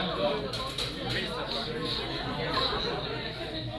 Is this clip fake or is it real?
real